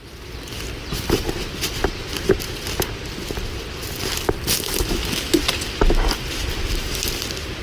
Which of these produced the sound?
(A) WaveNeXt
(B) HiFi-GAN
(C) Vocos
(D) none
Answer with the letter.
D